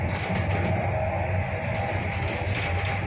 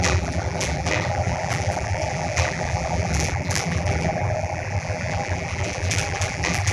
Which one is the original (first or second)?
first